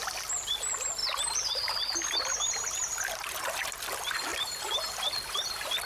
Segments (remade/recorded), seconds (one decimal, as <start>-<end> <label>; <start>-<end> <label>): 0.0-5.9 recorded

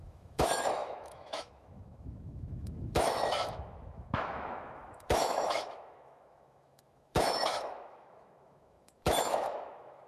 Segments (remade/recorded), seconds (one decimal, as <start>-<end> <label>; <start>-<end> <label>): 0.0-10.1 remade

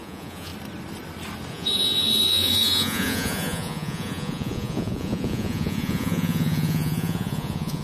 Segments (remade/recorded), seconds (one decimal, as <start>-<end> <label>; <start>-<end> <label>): 0.0-0.5 remade; 0.5-1.5 recorded; 1.5-7.8 remade

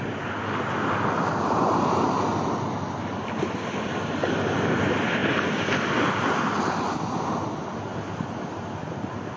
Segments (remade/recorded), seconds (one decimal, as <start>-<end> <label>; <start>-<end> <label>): 0.0-9.4 recorded

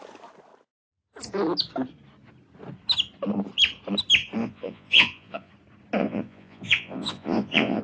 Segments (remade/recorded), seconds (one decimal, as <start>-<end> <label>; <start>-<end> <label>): 0.0-4.4 recorded; 4.4-5.5 remade; 5.5-6.0 recorded; 6.0-7.8 remade

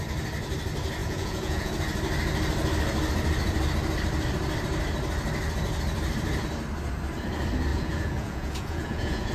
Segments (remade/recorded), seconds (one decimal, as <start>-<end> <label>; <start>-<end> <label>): 0.0-1.0 recorded; 1.0-1.7 remade; 1.7-7.7 recorded; 7.7-9.3 remade

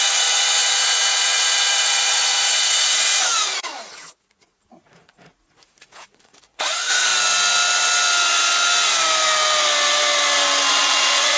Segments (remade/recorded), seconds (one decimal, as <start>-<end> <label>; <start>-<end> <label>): 0.0-7.1 remade; 7.1-10.7 recorded; 10.7-11.4 remade